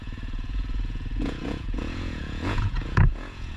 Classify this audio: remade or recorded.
remade